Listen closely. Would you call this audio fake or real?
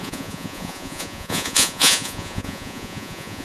fake